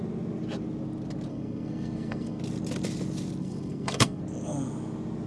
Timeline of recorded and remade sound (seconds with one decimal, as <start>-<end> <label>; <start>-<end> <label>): 0.0-1.3 recorded; 1.3-2.4 remade; 2.4-3.4 recorded; 3.4-4.2 remade; 4.2-5.3 recorded